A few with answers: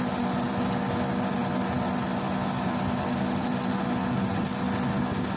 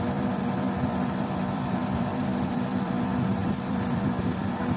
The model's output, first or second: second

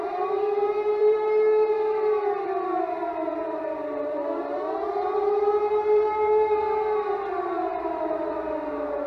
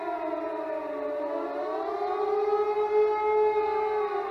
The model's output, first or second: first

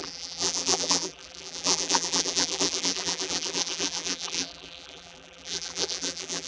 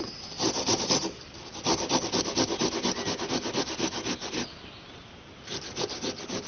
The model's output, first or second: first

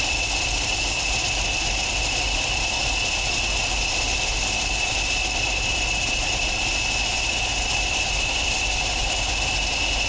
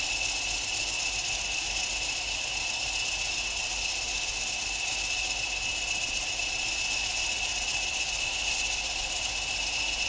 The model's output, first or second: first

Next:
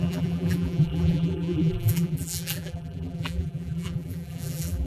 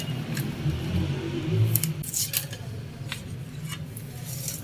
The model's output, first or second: first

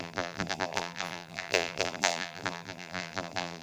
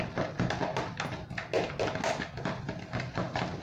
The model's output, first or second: first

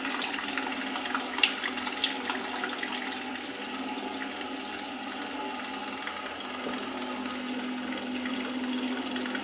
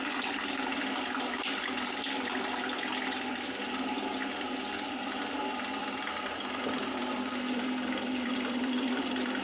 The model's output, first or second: second